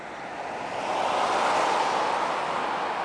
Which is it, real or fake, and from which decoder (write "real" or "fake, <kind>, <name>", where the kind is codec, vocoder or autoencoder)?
real